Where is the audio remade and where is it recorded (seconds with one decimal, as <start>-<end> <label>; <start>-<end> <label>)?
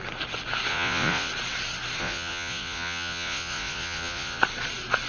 0.0-0.7 recorded; 0.7-1.3 remade; 1.3-2.0 recorded; 2.0-4.4 remade; 4.4-5.1 recorded